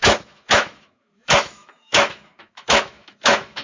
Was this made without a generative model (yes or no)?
no